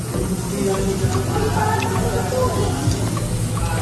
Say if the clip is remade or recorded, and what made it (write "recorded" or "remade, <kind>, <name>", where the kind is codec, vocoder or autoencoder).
recorded